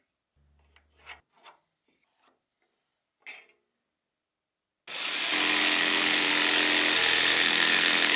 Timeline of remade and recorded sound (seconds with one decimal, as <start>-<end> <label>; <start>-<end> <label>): 0.0-5.6 recorded; 5.6-6.3 remade; 6.3-7.3 recorded; 7.3-8.2 remade